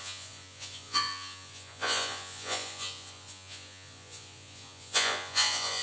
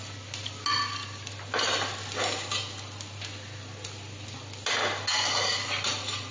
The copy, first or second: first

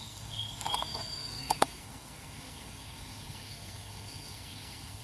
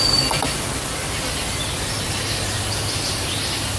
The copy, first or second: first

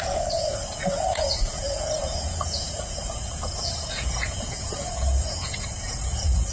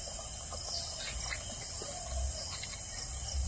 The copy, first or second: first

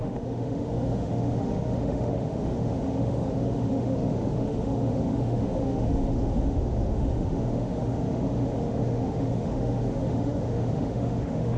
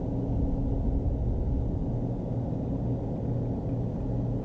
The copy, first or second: first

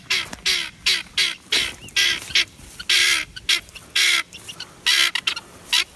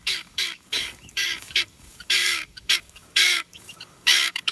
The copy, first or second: second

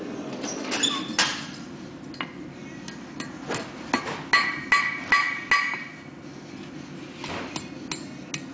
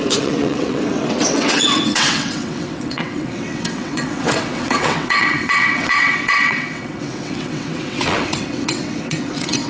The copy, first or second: second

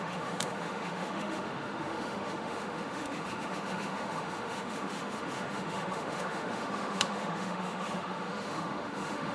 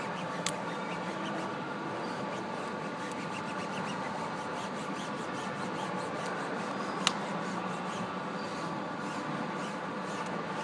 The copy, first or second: first